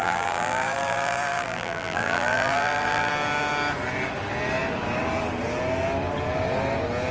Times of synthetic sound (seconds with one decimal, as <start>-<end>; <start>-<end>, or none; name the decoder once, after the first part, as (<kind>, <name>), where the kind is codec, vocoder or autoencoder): 0.0-3.1 (vocoder, BigVGAN v2)